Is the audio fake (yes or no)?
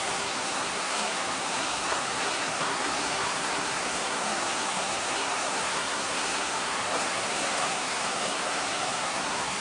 yes